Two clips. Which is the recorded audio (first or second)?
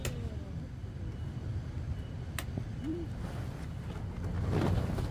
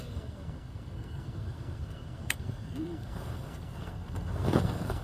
first